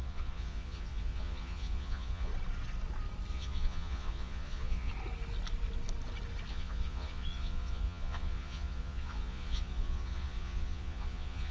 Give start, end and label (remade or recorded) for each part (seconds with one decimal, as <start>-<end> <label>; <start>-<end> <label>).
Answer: 0.0-2.3 remade; 2.3-3.3 recorded; 3.3-4.9 remade; 4.9-6.5 recorded; 6.5-11.5 remade